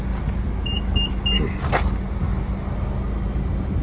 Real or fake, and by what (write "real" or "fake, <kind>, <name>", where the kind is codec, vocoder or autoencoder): real